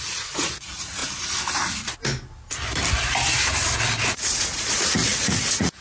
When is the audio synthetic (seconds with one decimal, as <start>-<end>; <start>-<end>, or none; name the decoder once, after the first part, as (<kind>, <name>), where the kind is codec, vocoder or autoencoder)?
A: 0.0-1.0 (vocoder, Vocos); 4.0-5.8